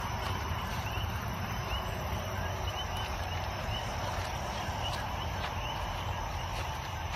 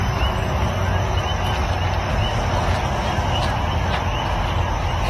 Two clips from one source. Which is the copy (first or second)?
first